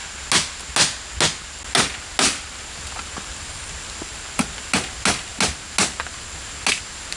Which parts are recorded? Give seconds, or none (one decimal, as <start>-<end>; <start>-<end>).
0.0-7.2